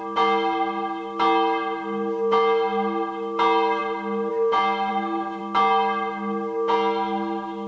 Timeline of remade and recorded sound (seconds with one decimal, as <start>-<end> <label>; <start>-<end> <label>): 0.0-4.9 recorded; 4.9-5.4 remade; 5.4-7.7 recorded